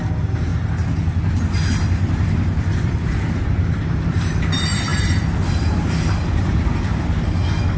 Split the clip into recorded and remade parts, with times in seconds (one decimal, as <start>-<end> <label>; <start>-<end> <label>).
0.0-0.5 remade; 0.5-2.8 recorded; 2.8-6.9 remade; 6.9-7.8 recorded